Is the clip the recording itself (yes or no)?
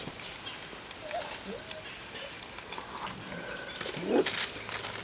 yes